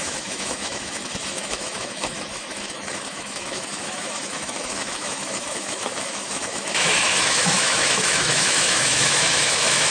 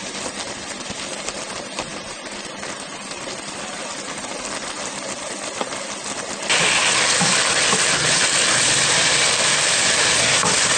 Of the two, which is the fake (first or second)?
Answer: first